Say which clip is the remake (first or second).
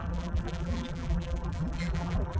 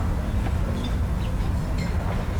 first